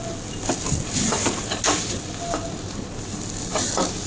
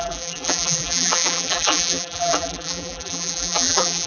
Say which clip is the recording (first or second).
first